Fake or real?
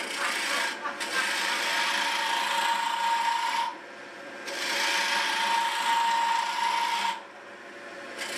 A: real